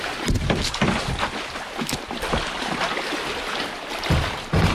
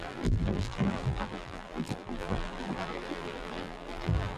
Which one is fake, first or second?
second